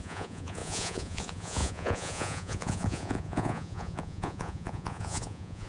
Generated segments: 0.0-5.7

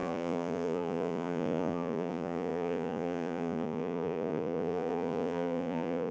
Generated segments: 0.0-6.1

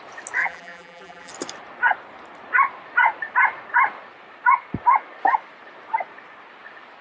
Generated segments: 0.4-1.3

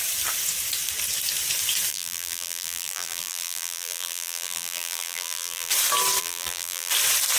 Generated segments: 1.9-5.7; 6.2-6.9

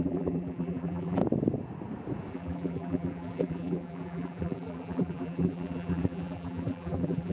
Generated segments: 0.0-1.2; 2.3-7.3